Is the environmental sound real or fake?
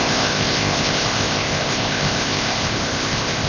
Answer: fake